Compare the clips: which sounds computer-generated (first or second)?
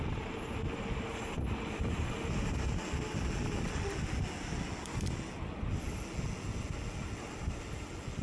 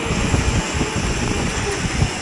second